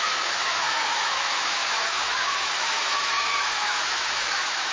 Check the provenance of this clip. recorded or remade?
remade